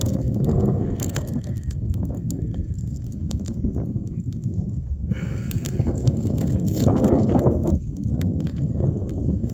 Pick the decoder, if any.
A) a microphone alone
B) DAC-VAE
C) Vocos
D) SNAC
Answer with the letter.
D